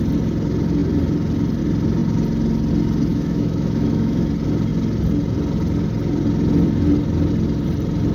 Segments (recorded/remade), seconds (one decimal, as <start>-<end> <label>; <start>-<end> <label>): 0.0-3.1 recorded; 3.1-4.3 remade; 4.3-8.1 recorded